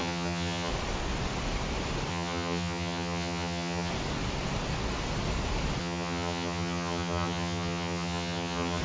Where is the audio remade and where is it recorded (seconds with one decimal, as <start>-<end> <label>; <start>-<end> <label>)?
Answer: 0.0-0.7 remade; 0.7-2.1 recorded; 2.1-3.9 remade; 3.9-5.8 recorded; 5.8-8.8 remade